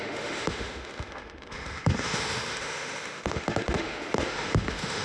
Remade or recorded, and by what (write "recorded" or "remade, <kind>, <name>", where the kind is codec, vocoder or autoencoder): remade, autoencoder, DAC-VAE